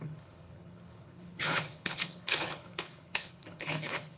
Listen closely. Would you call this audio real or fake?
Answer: fake